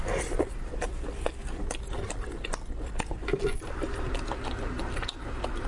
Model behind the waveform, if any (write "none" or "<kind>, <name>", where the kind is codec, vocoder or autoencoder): none